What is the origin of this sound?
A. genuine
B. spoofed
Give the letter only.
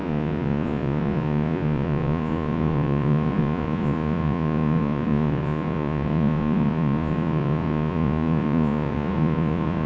B